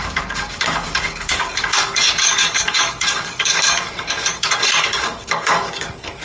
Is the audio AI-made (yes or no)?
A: yes